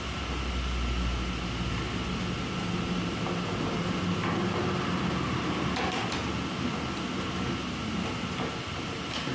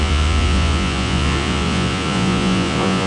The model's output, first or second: second